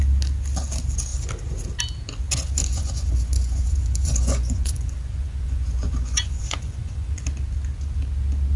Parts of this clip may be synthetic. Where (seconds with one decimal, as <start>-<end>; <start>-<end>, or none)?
2.6-7.2